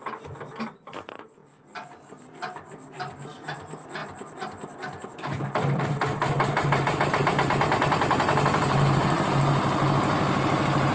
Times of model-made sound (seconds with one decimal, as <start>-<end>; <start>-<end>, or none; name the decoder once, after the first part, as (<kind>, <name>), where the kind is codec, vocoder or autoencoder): none